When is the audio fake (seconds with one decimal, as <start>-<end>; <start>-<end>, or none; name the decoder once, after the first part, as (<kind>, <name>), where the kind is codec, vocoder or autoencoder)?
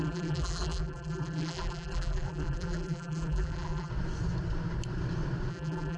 0.0-3.9 (vocoder, BigVGAN v2); 5.5-6.0